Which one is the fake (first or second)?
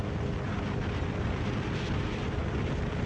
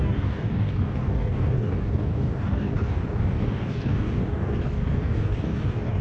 second